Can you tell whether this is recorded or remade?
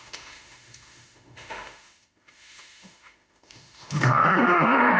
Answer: remade